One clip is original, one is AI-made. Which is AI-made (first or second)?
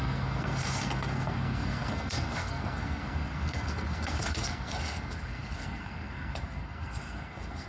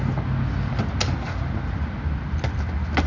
first